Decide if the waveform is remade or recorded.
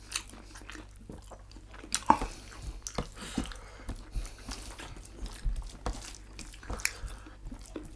recorded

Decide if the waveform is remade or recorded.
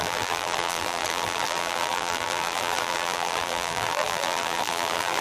remade